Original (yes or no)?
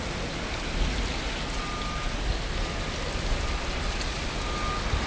yes